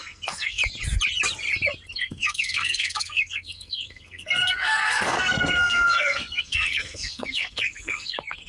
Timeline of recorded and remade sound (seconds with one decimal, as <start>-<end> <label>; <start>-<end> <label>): 0.0-0.6 remade; 0.6-1.9 recorded; 1.9-8.5 remade